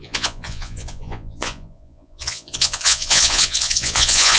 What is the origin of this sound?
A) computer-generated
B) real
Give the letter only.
A